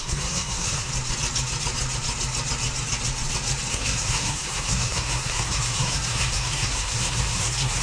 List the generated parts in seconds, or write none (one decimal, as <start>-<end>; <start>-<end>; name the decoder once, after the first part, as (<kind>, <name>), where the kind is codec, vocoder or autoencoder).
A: 0.0-0.9 (codec, SNAC); 3.7-7.8